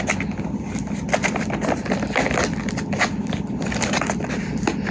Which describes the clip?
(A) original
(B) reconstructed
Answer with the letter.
A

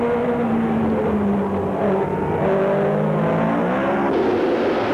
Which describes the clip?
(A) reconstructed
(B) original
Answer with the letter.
B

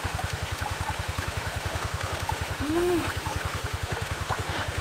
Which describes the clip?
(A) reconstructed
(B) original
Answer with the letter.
A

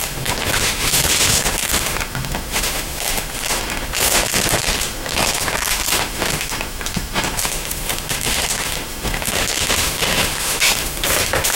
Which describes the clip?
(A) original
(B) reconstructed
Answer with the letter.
B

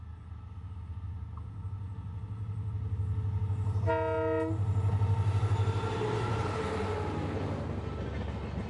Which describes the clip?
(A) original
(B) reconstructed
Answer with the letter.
A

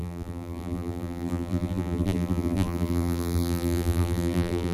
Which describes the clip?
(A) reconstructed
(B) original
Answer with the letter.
A